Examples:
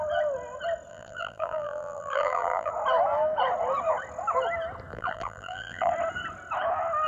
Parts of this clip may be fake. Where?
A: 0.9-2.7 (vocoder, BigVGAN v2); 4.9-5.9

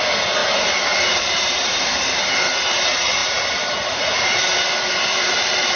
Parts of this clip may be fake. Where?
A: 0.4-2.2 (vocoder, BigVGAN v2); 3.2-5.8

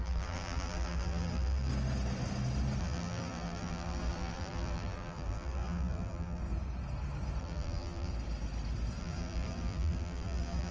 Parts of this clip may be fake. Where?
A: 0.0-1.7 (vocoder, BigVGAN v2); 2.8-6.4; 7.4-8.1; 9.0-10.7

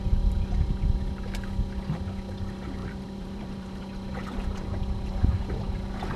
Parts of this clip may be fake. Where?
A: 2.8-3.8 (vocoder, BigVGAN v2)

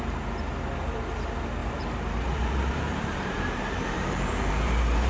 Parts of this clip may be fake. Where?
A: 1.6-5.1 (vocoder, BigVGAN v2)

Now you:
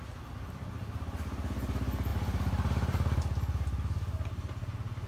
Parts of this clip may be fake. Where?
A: 2.1-3.2 (vocoder, BigVGAN v2)